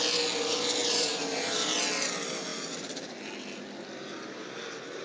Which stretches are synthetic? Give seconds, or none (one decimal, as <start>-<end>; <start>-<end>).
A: 0.8-1.8